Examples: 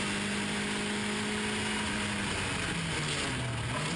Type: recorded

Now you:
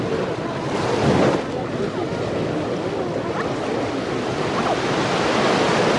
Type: recorded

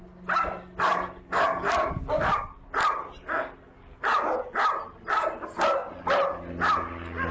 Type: recorded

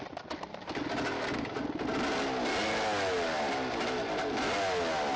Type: recorded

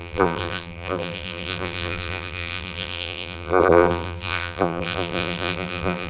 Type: remade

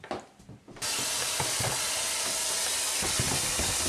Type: recorded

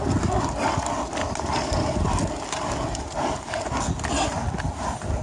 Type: recorded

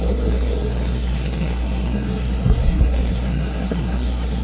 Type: remade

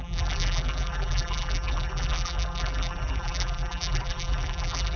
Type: remade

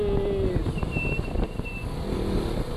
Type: recorded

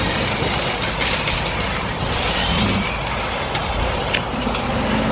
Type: recorded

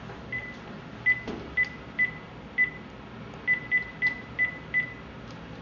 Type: recorded